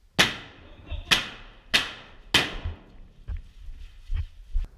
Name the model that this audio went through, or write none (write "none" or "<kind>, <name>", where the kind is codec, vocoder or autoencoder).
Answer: none